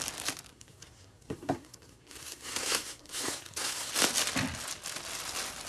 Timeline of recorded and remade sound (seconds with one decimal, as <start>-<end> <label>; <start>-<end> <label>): 0.0-0.5 recorded; 0.5-3.9 remade; 3.9-5.7 recorded